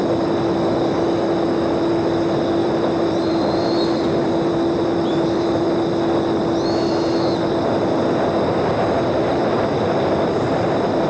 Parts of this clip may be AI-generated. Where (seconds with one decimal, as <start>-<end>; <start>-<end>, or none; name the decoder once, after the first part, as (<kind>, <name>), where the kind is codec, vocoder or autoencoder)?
2.6-5.6 (vocoder, BigVGAN v2)